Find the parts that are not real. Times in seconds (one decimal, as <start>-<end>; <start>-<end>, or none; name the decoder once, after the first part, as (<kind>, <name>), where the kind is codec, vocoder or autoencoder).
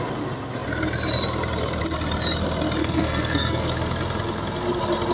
2.8-3.7 (codec, SNAC)